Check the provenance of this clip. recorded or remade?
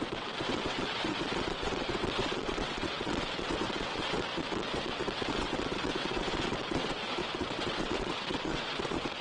remade